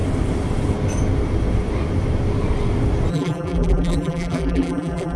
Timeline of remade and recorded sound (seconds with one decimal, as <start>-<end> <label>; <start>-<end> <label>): 0.0-3.1 recorded; 3.1-5.2 remade